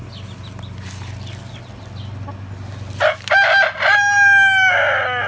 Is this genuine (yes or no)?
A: yes